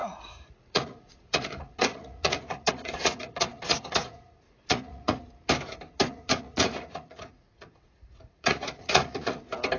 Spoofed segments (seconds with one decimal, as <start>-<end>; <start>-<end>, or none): 0.0-5.2; 6.1-9.4